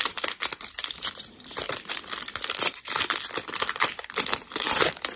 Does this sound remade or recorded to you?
remade